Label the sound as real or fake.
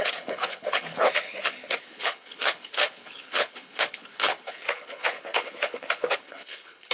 fake